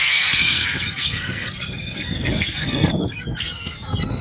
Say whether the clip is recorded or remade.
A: remade